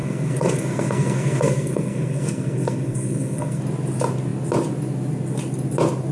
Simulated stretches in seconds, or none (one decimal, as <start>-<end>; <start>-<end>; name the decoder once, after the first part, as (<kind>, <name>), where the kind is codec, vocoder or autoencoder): 0.0-3.6 (codec, SNAC)